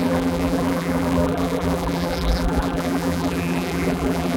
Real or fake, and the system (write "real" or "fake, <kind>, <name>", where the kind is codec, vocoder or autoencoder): fake, vocoder, BigVGAN v2